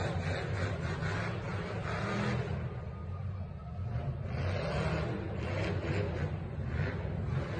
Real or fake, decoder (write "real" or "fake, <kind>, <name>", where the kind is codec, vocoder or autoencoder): real